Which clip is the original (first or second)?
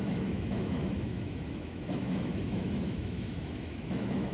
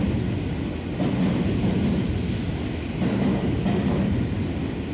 second